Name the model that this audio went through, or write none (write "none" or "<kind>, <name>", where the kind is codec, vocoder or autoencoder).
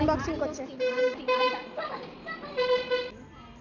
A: none